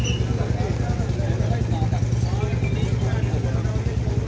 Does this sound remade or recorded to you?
recorded